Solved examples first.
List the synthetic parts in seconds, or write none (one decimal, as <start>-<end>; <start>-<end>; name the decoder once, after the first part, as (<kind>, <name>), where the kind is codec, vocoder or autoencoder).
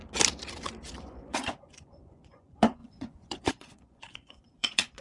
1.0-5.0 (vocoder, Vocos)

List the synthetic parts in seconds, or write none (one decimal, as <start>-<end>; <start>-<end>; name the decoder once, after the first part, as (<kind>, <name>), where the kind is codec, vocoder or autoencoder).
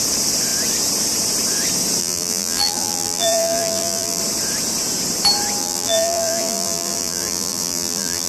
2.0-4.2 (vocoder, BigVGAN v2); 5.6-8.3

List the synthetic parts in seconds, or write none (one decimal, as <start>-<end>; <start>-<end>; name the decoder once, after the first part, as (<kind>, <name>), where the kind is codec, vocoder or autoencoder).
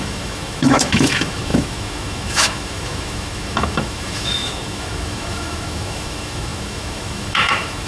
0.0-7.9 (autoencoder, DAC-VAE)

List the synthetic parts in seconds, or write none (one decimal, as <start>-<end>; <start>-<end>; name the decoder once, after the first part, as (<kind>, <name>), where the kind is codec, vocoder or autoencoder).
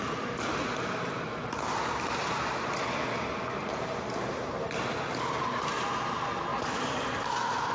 none